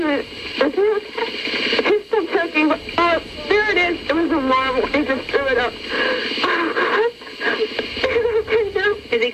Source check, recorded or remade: recorded